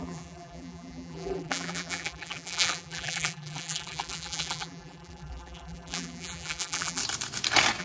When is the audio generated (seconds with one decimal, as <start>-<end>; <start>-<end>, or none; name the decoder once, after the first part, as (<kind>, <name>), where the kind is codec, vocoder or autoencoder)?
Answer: 0.0-7.0 (vocoder, BigVGAN v2)